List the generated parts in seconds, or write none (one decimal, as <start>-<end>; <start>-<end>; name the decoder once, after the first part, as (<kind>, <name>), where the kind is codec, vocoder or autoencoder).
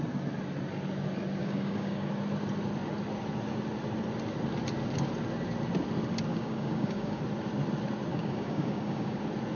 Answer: 1.4-2.1 (codec, DAC); 6.3-7.2; 8.1-9.2